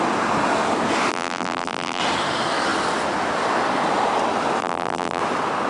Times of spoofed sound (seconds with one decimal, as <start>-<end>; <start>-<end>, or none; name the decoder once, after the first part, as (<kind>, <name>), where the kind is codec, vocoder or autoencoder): 1.1-2.0 (vocoder, BigVGAN v2); 4.6-5.2